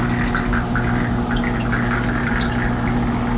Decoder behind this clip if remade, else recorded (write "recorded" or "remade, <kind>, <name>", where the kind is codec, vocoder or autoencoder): recorded